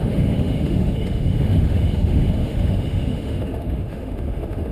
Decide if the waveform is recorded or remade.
remade